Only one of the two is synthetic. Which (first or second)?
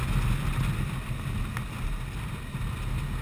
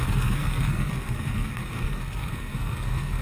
second